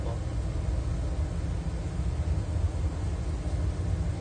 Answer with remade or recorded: recorded